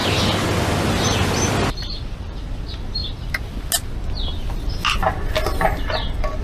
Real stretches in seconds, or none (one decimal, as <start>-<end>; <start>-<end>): 0.0-6.4